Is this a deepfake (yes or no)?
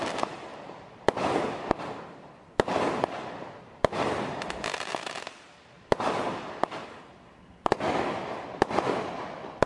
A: no